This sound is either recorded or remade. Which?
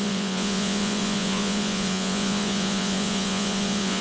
remade